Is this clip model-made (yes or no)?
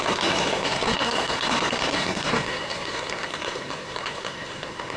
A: yes